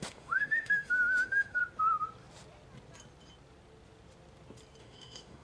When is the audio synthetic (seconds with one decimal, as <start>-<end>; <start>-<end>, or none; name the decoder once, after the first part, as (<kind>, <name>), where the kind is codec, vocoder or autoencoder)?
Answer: 0.0-1.6 (autoencoder, DAC-VAE); 4.8-5.4